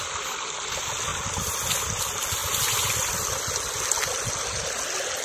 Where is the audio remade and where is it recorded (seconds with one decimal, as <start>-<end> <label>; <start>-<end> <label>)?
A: 0.0-5.2 recorded